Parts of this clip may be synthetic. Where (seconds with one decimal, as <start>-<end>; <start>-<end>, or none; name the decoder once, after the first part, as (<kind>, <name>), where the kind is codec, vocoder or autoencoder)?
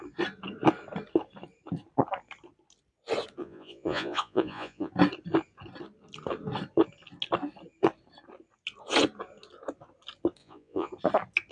3.4-4.9 (vocoder, Vocos); 10.4-10.9